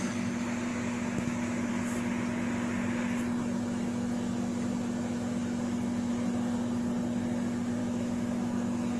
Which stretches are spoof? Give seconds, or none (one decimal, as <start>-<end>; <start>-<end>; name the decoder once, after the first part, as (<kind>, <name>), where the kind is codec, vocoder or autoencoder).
0.7-1.7 (autoencoder, DAC-VAE); 7.8-9.0